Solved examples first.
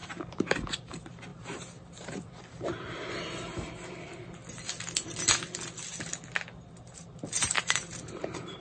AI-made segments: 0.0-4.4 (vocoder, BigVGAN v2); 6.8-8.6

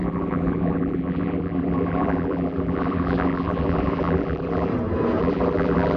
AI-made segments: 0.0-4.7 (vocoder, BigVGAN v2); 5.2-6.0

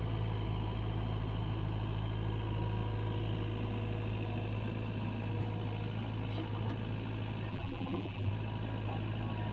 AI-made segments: 7.5-8.3 (vocoder, BigVGAN v2)

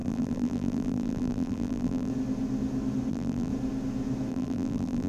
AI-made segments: 0.0-2.1 (vocoder, BigVGAN v2); 3.1-3.5; 4.3-5.1

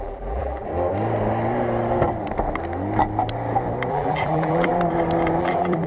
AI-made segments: 0.0-0.7 (vocoder, BigVGAN v2); 3.9-4.7; 5.4-5.9